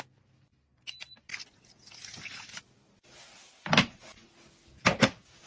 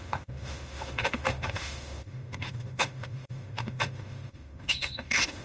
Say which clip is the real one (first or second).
first